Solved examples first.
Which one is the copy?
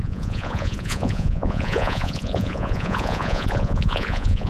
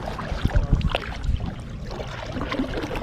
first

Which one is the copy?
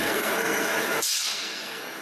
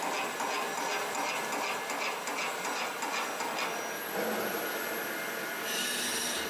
first